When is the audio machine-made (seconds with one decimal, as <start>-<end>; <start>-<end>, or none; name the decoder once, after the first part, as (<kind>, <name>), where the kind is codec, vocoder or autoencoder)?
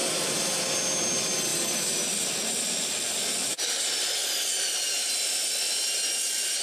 none